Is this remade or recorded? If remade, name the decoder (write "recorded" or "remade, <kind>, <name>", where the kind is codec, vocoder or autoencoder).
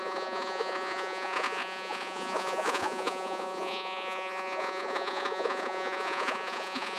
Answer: remade, vocoder, Vocos